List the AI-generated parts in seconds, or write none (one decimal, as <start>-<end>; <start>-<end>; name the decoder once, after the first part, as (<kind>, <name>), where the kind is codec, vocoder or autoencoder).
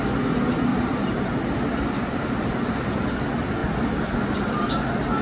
0.7-3.2 (vocoder, BigVGAN v2)